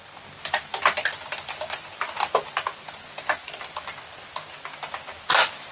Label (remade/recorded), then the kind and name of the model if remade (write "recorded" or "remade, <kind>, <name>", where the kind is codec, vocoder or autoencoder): recorded